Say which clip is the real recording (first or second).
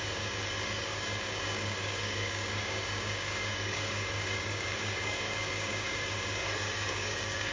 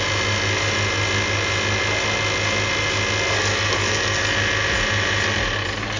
second